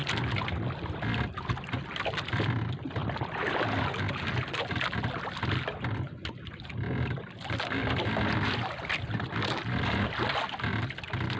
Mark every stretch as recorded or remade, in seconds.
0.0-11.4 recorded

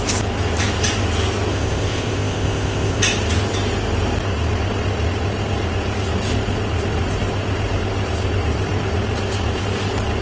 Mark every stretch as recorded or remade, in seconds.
0.0-1.5 recorded; 1.5-3.0 remade; 3.0-10.2 recorded

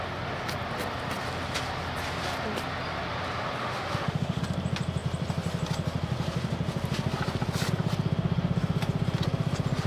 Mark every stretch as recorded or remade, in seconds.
0.0-3.6 recorded; 3.6-4.4 remade; 4.4-9.9 recorded

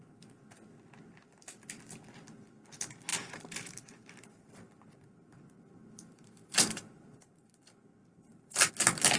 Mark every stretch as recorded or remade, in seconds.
0.0-3.1 recorded; 3.1-7.5 remade; 7.5-8.0 recorded; 8.0-8.7 remade; 8.7-9.2 recorded

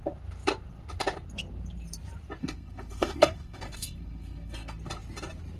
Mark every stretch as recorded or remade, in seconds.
0.0-2.4 recorded; 2.4-4.8 remade; 4.8-5.6 recorded

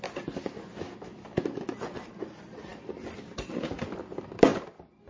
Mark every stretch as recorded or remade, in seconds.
0.0-5.1 recorded

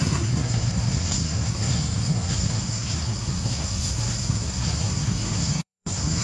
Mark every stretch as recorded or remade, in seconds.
0.0-6.2 remade